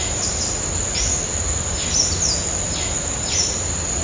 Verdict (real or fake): real